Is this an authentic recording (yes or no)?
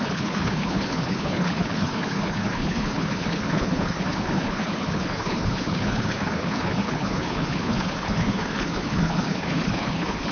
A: no